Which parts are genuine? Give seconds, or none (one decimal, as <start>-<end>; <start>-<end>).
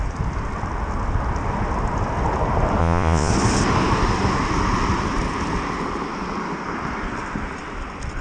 0.0-2.8; 3.3-8.2